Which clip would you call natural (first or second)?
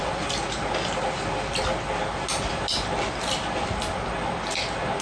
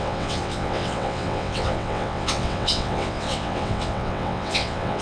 first